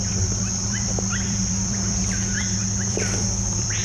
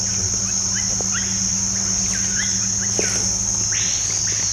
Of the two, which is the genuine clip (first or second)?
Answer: second